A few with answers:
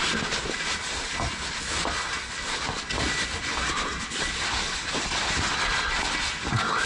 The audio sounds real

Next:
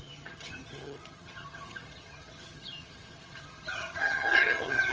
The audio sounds fake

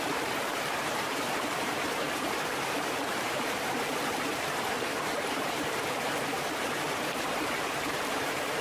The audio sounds fake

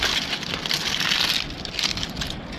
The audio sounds real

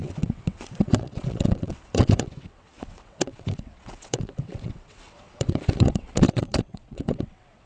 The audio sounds fake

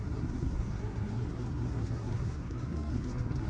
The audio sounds fake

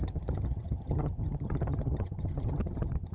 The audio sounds fake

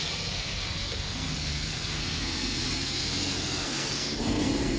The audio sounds fake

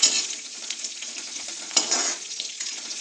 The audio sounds fake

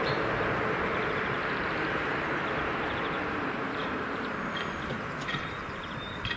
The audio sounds fake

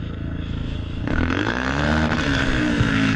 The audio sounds fake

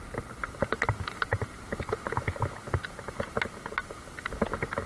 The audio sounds real